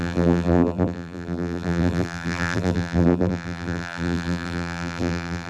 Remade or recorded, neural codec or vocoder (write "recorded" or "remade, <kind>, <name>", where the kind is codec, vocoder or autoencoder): remade, vocoder, BigVGAN v2